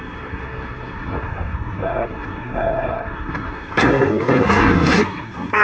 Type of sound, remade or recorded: remade